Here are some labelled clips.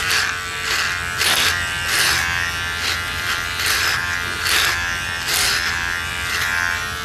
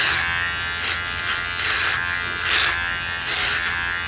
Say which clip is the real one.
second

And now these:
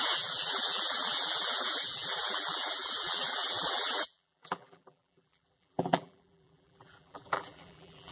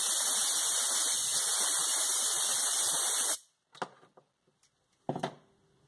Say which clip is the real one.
second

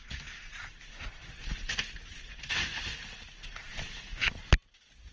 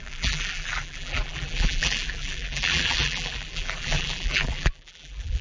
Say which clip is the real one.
first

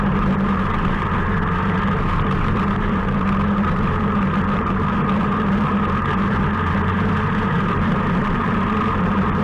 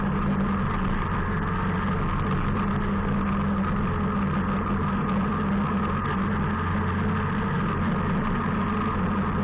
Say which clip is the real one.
second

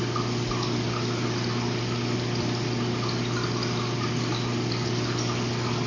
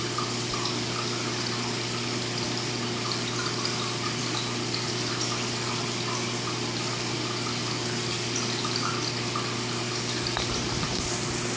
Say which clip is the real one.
first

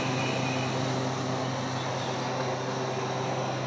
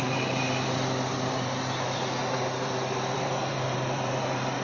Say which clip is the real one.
first